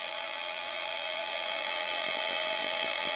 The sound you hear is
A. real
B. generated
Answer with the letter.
B